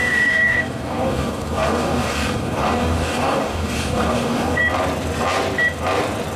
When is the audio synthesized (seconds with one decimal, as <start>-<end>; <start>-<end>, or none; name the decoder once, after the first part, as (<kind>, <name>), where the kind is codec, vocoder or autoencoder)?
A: 0.0-4.6 (codec, DAC)